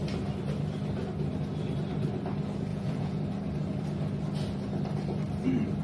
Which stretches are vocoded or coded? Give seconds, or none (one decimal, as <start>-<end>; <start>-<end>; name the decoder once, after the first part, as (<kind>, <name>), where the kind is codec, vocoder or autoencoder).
2.7-3.2 (vocoder, Vocos)